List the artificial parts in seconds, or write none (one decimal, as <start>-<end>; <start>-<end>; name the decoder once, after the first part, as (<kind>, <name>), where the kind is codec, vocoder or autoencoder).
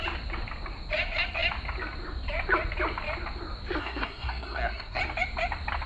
3.8-5.0 (codec, SNAC)